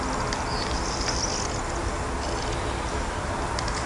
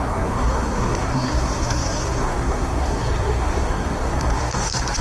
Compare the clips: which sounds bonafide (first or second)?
first